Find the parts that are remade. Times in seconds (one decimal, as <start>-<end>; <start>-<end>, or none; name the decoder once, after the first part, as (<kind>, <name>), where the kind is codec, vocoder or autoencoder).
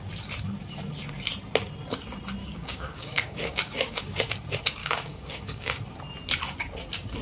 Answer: 2.4-4.3 (codec, DAC); 4.8-5.8